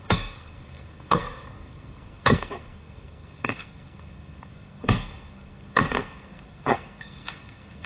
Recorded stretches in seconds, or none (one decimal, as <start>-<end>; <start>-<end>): none